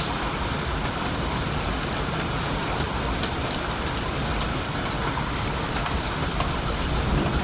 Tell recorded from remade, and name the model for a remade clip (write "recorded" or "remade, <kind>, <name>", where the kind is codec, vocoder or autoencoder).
remade, vocoder, BigVGAN v2